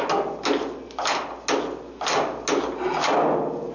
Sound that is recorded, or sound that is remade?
recorded